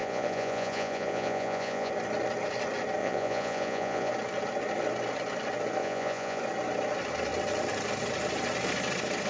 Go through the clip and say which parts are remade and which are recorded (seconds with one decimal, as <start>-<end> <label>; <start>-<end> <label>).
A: 0.0-1.9 remade; 1.9-3.0 recorded; 3.0-4.1 remade; 4.1-5.8 recorded; 5.8-6.4 remade; 6.4-9.3 recorded